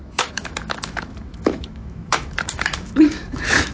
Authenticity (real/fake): fake